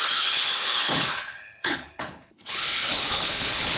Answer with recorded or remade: remade